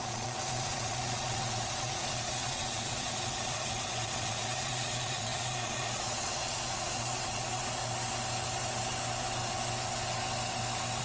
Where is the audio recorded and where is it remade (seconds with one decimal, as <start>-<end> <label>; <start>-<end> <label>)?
0.0-7.8 remade; 7.8-11.0 recorded

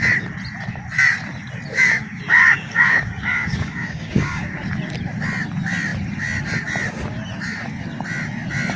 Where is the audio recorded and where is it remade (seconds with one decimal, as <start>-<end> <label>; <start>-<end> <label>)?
0.0-1.7 recorded; 1.7-4.6 remade; 4.6-8.8 recorded